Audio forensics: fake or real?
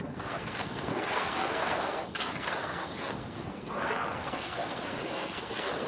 fake